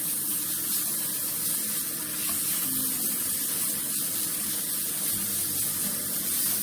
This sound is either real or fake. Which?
real